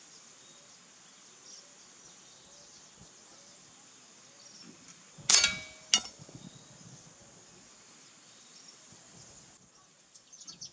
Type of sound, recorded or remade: recorded